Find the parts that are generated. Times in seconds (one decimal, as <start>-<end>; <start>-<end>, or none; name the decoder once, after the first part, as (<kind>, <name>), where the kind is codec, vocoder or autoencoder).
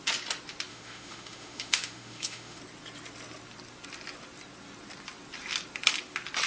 0.7-2.6 (autoencoder, DAC-VAE)